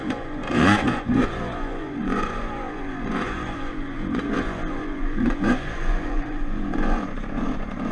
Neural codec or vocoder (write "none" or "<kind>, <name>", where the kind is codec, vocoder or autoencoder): vocoder, Vocos